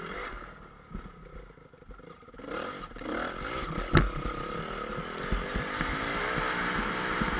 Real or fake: real